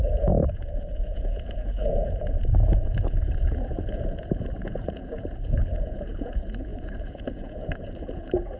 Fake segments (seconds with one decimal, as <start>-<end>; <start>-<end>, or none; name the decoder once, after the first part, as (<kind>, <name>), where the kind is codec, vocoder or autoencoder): 0.0-8.6 (vocoder, Vocos)